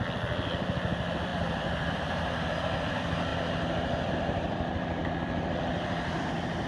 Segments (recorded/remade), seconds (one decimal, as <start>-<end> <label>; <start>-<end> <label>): 0.0-3.3 remade; 3.3-4.1 recorded; 4.1-6.7 remade